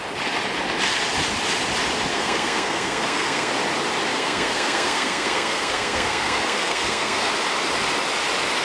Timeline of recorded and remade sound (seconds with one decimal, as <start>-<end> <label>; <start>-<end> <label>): 0.0-2.1 recorded; 2.1-3.5 remade; 3.5-4.1 recorded; 4.1-7.3 remade; 7.3-8.6 recorded